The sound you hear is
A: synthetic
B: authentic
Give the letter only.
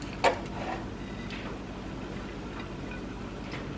B